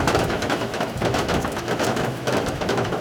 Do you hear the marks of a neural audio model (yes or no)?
yes